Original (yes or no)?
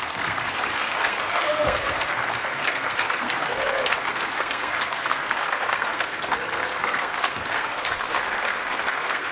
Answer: no